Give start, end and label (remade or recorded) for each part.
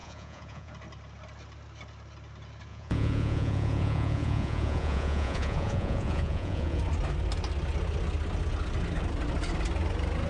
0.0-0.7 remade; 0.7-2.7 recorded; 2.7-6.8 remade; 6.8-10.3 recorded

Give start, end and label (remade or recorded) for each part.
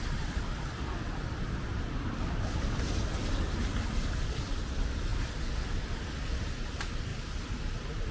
0.0-5.1 remade; 5.1-5.8 recorded; 5.8-7.1 remade; 7.1-8.1 recorded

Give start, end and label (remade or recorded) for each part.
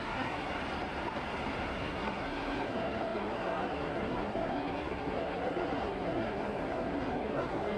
0.0-0.6 remade; 0.6-1.6 recorded; 1.6-7.8 remade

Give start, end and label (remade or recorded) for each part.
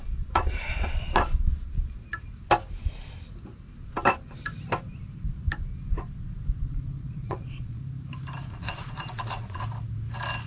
0.0-2.0 remade; 2.0-7.0 recorded; 7.0-7.8 remade; 7.8-8.5 recorded; 8.5-9.6 remade; 9.6-10.5 recorded